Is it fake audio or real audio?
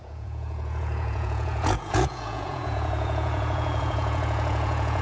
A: fake